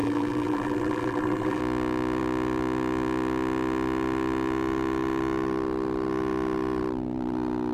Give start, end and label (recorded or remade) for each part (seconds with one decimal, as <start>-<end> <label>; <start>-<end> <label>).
0.0-1.6 remade; 1.6-7.7 recorded